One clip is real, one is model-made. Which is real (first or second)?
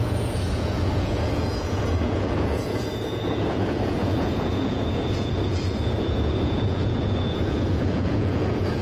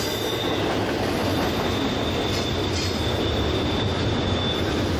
second